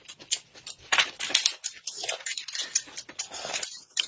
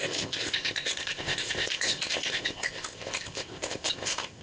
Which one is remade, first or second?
second